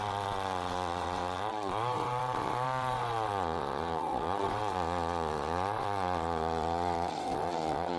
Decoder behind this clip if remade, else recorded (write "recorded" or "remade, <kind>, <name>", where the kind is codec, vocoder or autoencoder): remade, vocoder, WaveNeXt